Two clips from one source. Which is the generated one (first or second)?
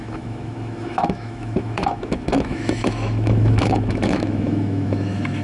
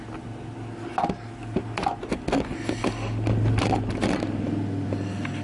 first